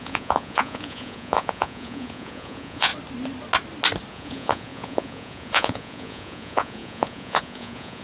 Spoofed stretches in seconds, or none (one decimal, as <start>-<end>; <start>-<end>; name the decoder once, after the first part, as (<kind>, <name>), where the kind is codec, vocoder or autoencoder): 0.0-2.9 (vocoder, Vocos); 4.1-8.0